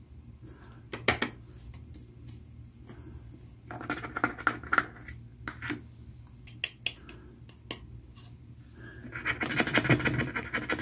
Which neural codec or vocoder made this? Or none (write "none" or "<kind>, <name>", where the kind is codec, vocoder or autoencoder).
none